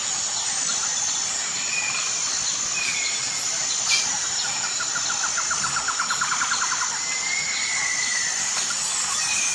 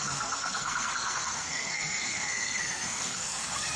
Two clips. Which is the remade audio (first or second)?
second